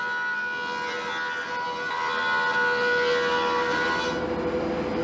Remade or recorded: recorded